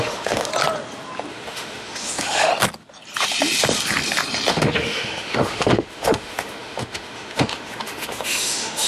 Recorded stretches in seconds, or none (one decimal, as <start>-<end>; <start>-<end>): 0.5-1.3; 2.5-4.5